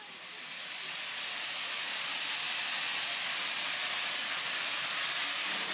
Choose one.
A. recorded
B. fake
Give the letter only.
A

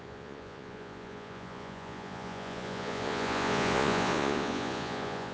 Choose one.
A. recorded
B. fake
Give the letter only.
B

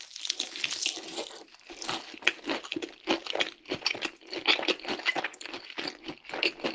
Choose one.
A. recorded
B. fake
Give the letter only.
A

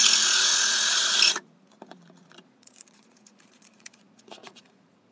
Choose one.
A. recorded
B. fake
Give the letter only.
B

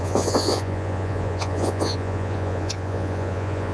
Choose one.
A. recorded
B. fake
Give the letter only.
B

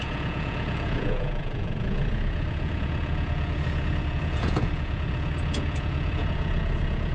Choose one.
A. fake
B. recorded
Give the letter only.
A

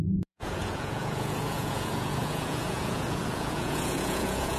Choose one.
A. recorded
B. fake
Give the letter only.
B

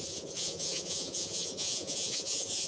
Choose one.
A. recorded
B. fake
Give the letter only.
B